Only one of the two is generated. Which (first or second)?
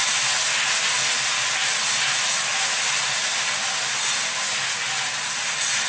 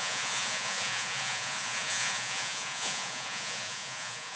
second